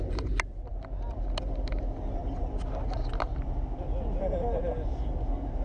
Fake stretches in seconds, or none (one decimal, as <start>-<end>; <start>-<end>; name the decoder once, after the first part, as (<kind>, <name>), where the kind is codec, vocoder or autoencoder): none